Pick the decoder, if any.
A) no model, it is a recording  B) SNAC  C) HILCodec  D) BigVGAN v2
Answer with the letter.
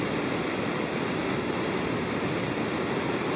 A